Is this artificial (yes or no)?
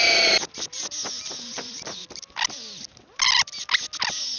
no